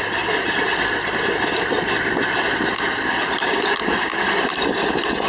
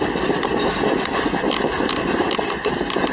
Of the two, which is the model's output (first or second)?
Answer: first